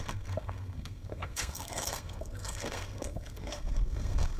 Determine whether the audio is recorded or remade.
remade